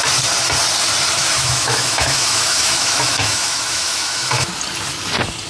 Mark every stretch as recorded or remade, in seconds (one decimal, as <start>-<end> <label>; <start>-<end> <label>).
0.0-1.2 recorded; 1.2-4.5 remade; 4.5-5.5 recorded